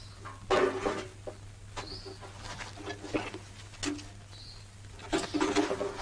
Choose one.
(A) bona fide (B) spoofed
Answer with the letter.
A